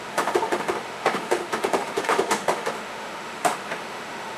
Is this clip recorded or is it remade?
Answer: remade